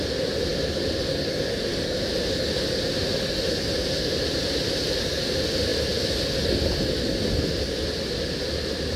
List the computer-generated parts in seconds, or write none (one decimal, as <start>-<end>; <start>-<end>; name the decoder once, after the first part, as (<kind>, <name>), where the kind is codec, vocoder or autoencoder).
7.1-8.0 (vocoder, BigVGAN v2)